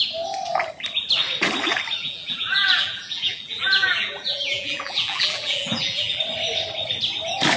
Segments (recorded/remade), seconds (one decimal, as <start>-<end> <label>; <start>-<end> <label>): 0.0-2.0 recorded; 2.0-6.2 remade; 6.2-7.6 recorded